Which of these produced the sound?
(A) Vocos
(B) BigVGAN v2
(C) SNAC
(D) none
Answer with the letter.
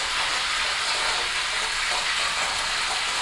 D